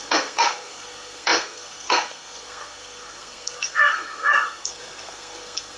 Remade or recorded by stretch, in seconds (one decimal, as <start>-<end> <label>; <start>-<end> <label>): 0.0-5.8 remade